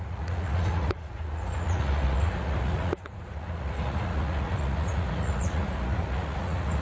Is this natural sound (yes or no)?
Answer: no